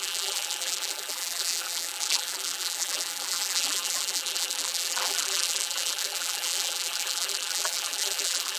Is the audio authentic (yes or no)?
no